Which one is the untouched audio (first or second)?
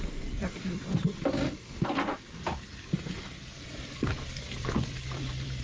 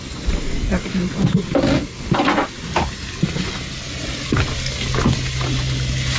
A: second